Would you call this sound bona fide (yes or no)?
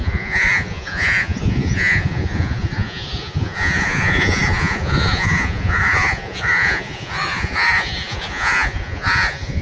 no